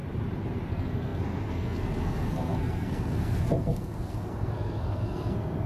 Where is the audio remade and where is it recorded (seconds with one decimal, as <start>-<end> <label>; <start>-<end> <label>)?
0.0-0.7 recorded; 0.7-5.7 remade